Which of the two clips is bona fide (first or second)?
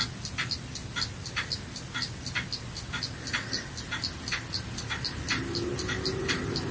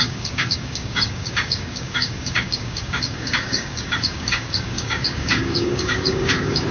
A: first